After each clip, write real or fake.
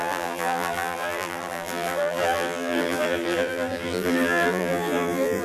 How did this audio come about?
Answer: fake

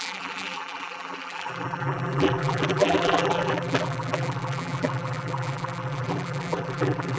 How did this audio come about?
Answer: fake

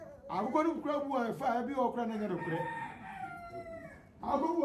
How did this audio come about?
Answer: real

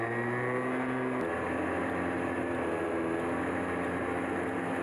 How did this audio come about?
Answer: real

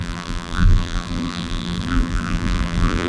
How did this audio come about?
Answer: fake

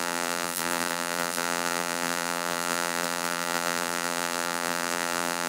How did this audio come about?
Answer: fake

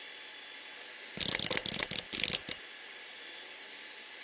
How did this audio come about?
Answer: real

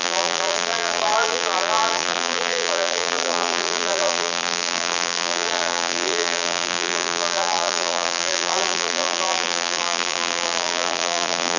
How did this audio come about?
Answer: fake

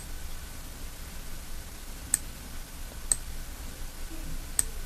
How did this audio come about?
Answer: real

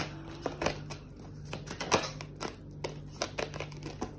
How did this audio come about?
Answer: real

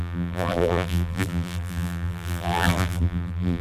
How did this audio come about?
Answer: fake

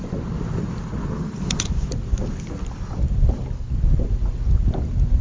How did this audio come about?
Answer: real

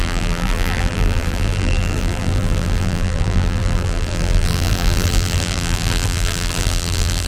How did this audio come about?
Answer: fake